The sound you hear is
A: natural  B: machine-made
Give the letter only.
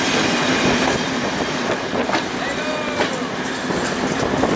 A